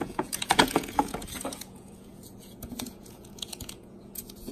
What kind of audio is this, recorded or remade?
remade